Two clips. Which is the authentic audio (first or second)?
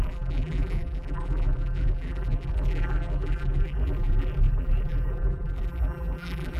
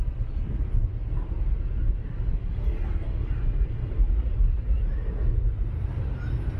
second